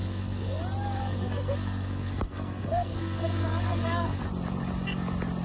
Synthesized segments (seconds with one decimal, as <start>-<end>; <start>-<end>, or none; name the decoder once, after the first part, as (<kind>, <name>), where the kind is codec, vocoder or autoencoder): 0.0-0.6 (codec, SNAC); 1.0-4.2